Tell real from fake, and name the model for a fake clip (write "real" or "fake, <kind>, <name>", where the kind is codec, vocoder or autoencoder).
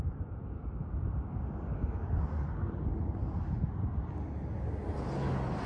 real